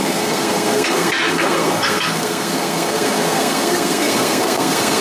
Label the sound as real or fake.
fake